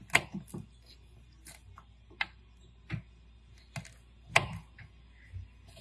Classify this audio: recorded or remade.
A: recorded